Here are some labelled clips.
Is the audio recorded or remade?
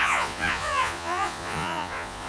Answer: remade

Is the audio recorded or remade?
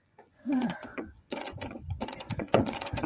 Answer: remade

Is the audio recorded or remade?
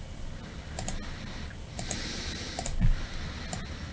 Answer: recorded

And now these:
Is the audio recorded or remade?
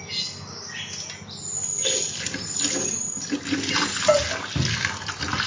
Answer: recorded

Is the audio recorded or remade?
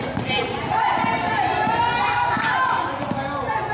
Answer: recorded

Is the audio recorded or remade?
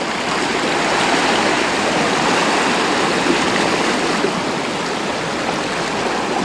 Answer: recorded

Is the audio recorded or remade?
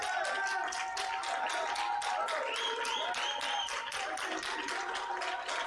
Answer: recorded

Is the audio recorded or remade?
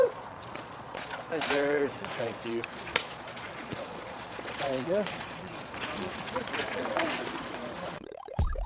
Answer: remade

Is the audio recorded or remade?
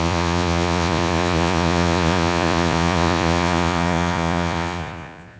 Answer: remade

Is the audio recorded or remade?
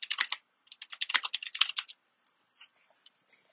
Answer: recorded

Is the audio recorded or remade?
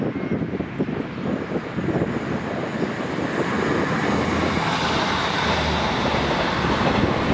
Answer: recorded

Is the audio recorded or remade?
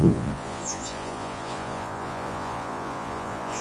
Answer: remade